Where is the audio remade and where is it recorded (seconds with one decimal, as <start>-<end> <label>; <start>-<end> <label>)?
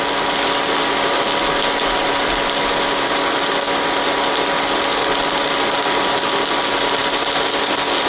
0.0-8.1 recorded